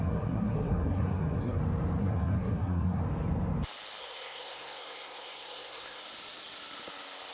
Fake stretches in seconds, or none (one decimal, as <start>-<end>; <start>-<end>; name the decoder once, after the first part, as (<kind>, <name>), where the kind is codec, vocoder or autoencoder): 0.0-1.6 (codec, SNAC); 2.0-3.0; 4.0-6.0